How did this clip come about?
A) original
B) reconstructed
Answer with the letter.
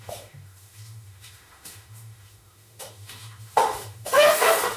B